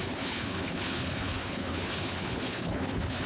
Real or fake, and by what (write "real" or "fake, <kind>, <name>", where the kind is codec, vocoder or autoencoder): fake, codec, HILCodec